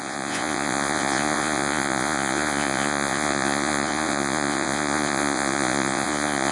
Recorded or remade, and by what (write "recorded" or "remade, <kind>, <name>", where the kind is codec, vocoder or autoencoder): remade, vocoder, Vocos